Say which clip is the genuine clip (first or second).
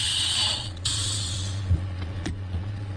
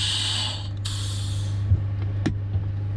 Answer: second